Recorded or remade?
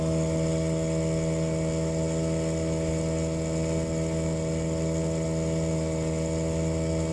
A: recorded